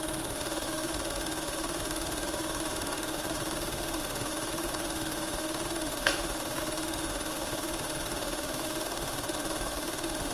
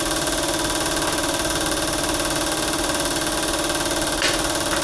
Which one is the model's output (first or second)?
first